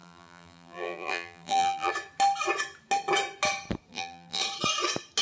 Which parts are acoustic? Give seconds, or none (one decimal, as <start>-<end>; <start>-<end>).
1.9-3.9; 4.4-5.2